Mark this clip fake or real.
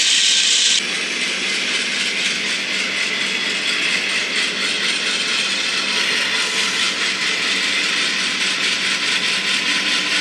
real